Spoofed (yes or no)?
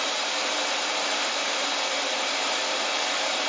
yes